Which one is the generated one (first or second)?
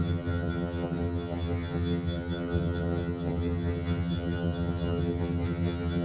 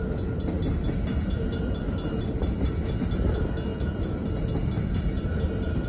first